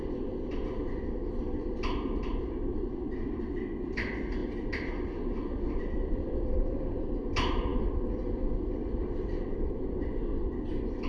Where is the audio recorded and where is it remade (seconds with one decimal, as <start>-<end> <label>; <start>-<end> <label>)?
0.0-11.1 recorded